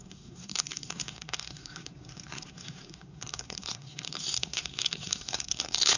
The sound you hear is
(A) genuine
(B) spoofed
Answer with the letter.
B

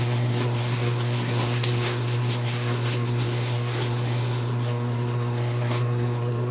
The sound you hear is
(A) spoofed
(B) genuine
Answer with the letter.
A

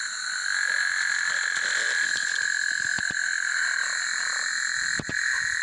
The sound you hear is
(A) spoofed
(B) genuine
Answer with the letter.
B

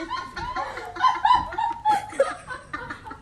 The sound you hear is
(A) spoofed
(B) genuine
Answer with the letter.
B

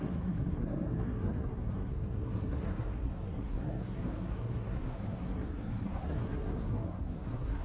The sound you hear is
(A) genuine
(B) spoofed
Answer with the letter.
B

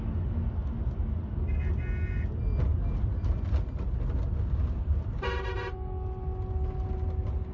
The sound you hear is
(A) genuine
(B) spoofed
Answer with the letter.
A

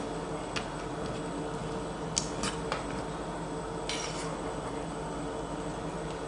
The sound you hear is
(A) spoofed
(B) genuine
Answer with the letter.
B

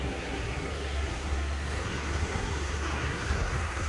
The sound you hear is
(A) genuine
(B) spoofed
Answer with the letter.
B